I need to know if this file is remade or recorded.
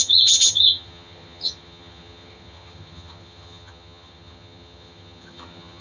remade